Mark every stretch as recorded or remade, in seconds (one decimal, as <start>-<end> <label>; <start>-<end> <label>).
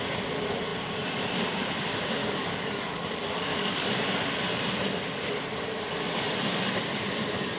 0.0-2.2 recorded; 2.2-3.9 remade; 3.9-7.6 recorded